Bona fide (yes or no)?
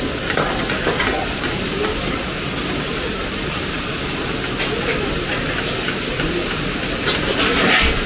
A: yes